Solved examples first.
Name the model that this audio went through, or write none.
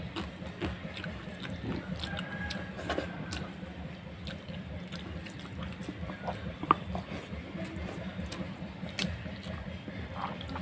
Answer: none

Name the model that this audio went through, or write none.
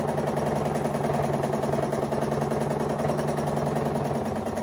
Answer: none